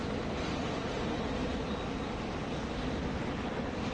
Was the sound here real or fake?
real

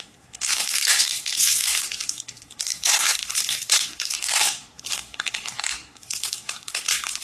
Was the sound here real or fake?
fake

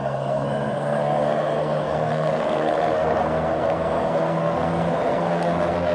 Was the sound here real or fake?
fake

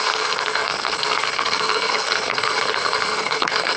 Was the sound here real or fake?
fake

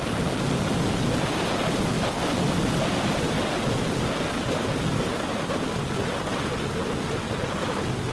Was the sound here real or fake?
real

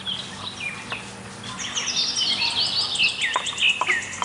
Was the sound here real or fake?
real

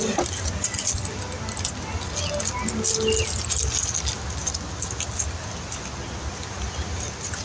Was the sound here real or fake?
real